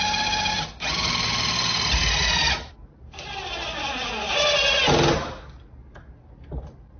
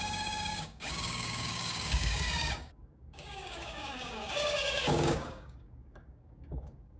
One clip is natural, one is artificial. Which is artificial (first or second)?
second